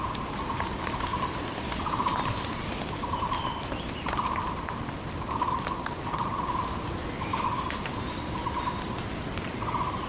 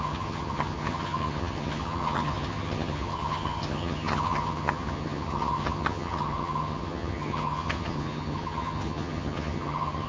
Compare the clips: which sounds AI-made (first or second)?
second